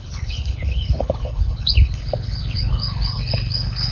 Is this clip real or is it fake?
fake